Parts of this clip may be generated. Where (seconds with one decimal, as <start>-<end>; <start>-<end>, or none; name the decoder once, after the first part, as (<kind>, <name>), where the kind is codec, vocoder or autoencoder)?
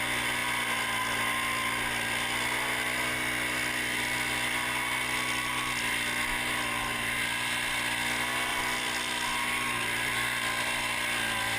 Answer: 8.5-9.2 (vocoder, BigVGAN v2)